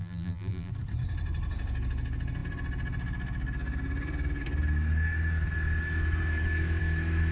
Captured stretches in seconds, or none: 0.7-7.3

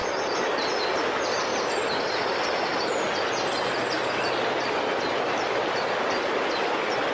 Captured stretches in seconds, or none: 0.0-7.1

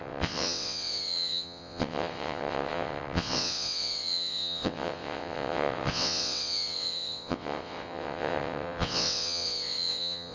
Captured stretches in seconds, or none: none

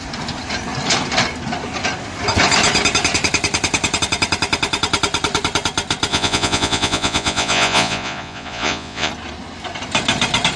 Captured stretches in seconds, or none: 0.0-6.1; 9.1-10.6